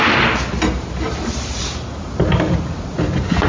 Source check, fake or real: real